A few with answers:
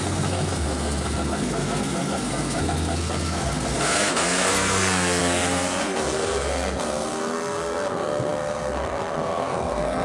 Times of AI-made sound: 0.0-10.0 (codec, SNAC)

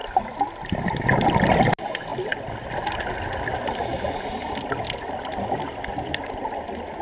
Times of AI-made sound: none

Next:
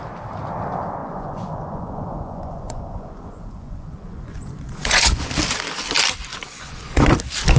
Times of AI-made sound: 1.0-5.3 (vocoder, Vocos); 6.3-7.1